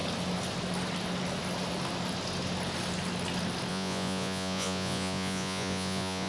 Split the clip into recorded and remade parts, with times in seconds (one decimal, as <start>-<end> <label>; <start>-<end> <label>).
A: 0.0-3.7 recorded; 3.7-6.3 remade

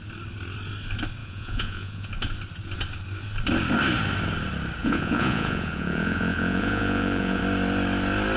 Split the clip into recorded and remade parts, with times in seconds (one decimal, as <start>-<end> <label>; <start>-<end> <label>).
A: 0.0-1.2 recorded; 1.2-2.1 remade; 2.1-4.8 recorded; 4.8-7.4 remade; 7.4-8.4 recorded

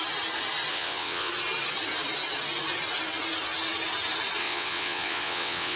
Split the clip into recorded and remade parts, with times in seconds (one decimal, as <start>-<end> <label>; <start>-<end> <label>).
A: 0.0-0.7 recorded; 0.7-1.3 remade; 1.3-4.4 recorded; 4.4-5.8 remade

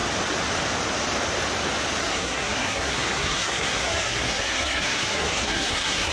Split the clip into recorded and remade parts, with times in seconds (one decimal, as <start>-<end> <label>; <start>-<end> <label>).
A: 0.0-2.0 recorded; 2.0-6.1 remade

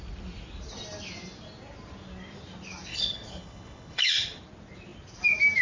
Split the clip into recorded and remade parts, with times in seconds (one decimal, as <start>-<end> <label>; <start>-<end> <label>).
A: 0.0-2.9 recorded; 2.9-4.1 remade; 4.1-5.6 recorded

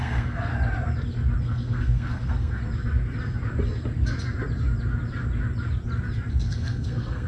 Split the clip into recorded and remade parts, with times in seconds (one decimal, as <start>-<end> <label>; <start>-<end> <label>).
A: 0.0-0.5 remade; 0.5-1.4 recorded; 1.4-2.6 remade; 2.6-6.3 recorded; 6.3-7.3 remade

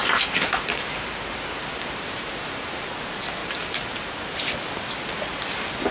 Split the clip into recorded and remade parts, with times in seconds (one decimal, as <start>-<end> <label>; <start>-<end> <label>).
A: 0.0-2.9 remade; 2.9-3.4 recorded; 3.4-4.1 remade; 4.1-5.9 recorded

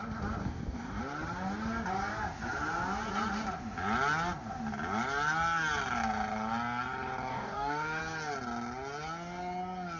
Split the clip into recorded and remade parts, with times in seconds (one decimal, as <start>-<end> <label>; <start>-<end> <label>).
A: 0.0-0.4 recorded; 0.4-1.0 remade; 1.0-7.3 recorded; 7.3-8.0 remade; 8.0-10.0 recorded